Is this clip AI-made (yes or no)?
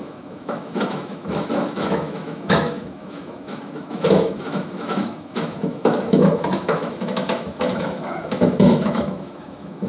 yes